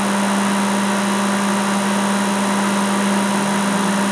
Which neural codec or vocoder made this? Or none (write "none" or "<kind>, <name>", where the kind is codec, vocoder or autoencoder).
none